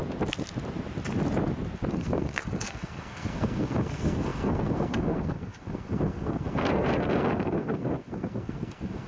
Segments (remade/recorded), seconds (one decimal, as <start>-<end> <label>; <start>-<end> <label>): 0.0-1.9 recorded; 1.9-9.1 remade